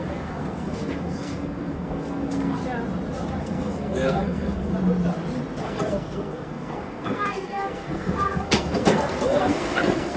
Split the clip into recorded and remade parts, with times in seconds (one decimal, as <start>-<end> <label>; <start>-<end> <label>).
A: 0.0-2.6 remade; 2.6-3.4 recorded; 3.4-4.7 remade; 4.7-5.6 recorded; 5.6-10.2 remade